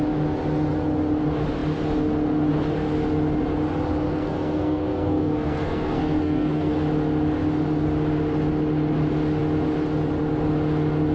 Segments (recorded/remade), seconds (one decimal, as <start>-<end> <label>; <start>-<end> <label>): 0.0-4.1 recorded; 4.1-6.7 remade; 6.7-11.1 recorded